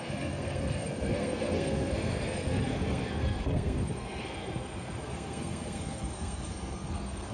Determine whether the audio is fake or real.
fake